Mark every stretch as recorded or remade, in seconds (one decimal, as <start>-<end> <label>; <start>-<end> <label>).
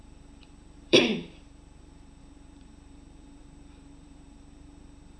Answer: 0.0-5.2 remade